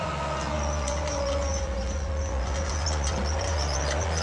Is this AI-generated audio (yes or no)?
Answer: yes